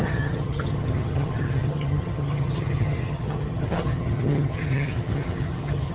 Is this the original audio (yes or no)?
no